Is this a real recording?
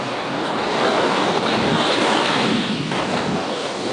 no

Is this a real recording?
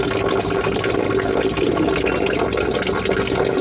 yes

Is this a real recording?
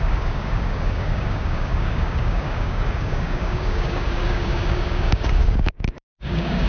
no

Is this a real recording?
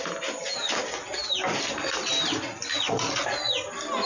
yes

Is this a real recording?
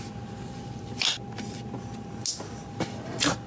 yes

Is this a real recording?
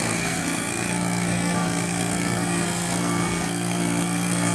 no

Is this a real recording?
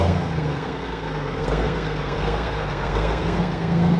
no